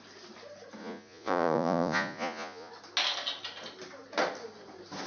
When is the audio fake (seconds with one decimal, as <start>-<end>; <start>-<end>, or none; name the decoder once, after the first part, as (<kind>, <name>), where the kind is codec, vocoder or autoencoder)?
0.8-2.7 (vocoder, Vocos)